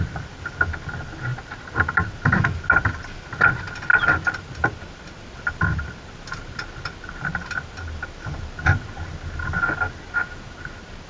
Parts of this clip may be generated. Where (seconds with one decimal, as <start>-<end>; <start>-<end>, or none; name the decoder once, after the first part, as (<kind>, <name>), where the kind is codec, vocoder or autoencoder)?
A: none